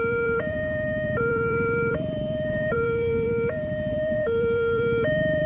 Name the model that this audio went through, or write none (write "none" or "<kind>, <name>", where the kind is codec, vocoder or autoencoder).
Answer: vocoder, BigVGAN v2